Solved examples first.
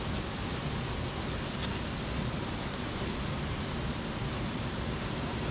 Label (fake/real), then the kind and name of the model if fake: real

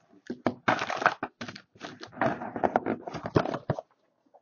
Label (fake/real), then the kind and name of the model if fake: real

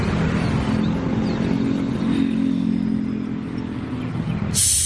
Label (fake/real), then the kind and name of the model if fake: real